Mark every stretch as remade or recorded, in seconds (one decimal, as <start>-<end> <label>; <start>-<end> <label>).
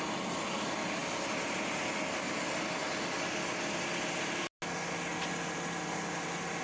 0.0-6.6 recorded